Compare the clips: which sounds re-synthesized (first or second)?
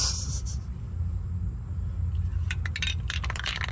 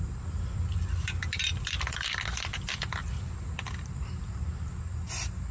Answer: second